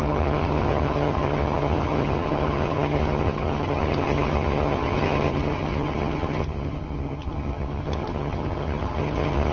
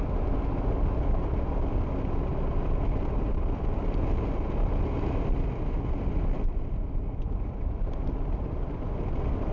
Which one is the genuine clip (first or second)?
second